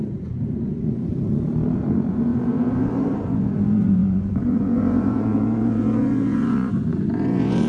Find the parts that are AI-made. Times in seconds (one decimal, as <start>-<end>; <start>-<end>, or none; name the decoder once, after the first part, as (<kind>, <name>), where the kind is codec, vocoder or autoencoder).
0.0-1.1 (vocoder, Vocos); 1.8-7.7